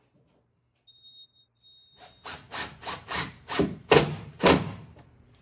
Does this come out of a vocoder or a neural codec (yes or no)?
yes